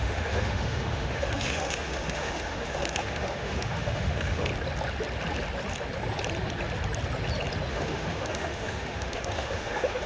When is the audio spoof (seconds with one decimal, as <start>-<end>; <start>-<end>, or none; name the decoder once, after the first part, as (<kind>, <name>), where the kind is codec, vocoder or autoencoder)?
0.0-4.5 (autoencoder, DAC-VAE); 7.7-10.1